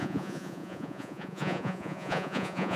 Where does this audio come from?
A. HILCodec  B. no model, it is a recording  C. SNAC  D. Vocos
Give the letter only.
D